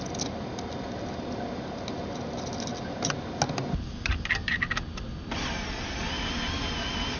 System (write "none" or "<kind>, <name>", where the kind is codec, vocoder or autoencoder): none